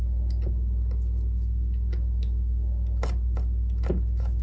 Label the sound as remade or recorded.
recorded